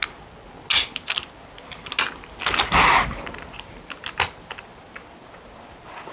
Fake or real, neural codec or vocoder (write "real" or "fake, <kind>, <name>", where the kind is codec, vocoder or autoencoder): real